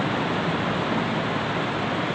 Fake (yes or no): no